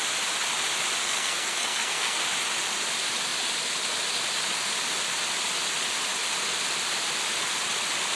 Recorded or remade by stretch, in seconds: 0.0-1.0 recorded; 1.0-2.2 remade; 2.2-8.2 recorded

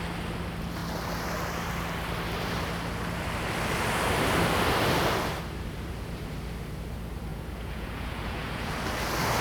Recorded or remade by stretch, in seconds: 0.0-7.3 recorded; 7.3-8.7 remade; 8.7-9.4 recorded

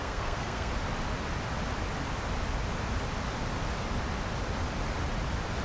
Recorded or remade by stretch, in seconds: 0.0-0.7 remade; 0.7-5.6 recorded

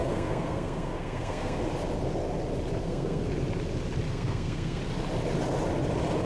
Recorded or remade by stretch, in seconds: 0.0-1.6 remade; 1.6-2.8 recorded; 2.8-3.3 remade; 3.3-4.1 recorded; 4.1-4.8 remade; 4.8-6.3 recorded

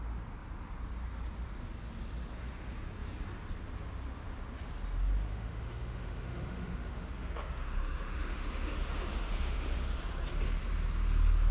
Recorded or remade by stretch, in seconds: 0.0-5.3 recorded; 5.3-10.0 remade; 10.0-11.5 recorded

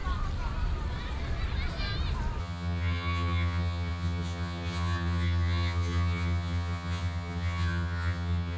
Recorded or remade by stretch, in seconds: 0.0-2.4 recorded; 2.4-8.6 remade